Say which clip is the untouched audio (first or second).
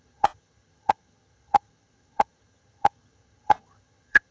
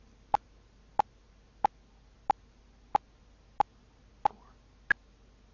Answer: second